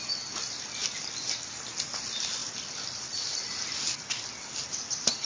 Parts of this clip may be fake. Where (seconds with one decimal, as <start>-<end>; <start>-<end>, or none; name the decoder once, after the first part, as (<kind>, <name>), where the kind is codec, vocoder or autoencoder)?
0.8-1.7 (vocoder, BigVGAN v2); 2.4-3.8